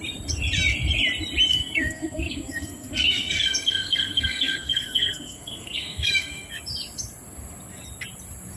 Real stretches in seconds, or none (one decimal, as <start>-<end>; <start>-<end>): 0.0-1.5; 6.5-8.6